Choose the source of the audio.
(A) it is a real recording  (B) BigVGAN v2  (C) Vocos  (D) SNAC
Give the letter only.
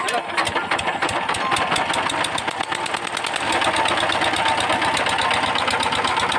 A